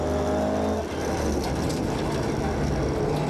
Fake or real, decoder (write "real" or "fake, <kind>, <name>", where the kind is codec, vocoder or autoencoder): real